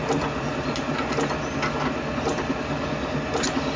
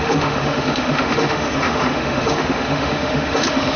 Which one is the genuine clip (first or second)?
first